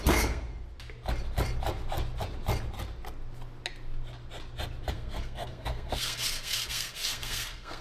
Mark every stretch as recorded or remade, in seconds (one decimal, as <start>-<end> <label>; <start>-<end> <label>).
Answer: 0.0-0.5 remade; 0.5-4.9 recorded; 4.9-7.8 remade